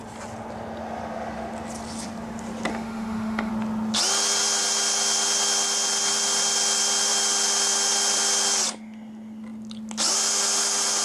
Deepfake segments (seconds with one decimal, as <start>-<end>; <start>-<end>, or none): 2.7-3.5